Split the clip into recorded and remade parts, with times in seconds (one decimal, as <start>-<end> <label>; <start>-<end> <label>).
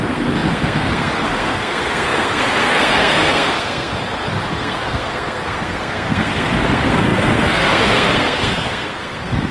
0.0-3.9 remade; 3.9-4.5 recorded; 4.5-9.5 remade